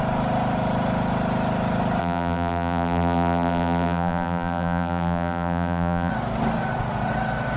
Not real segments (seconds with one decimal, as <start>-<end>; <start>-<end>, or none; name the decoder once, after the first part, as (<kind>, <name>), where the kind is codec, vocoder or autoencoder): 2.0-6.1 (vocoder, BigVGAN v2)